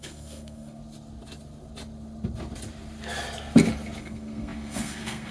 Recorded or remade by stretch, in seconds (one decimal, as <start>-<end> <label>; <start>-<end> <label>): 0.0-0.8 remade; 0.8-4.0 recorded; 4.0-5.3 remade